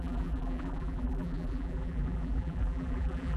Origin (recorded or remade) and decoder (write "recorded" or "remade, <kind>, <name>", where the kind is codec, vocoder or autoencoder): remade, vocoder, BigVGAN v2